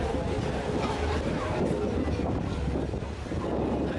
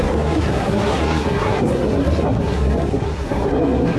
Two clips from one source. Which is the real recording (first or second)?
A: first